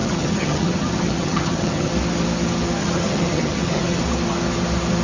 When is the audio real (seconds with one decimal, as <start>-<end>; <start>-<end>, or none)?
1.9-2.8; 4.0-5.0